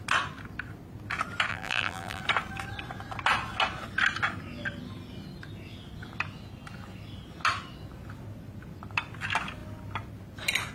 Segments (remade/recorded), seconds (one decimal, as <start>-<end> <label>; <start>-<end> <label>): 0.0-1.5 recorded; 1.5-2.2 remade; 2.2-10.7 recorded